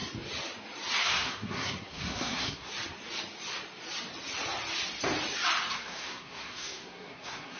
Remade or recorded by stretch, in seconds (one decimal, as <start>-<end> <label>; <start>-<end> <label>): 0.0-1.0 recorded; 1.0-2.7 remade; 2.7-5.7 recorded; 5.7-7.6 remade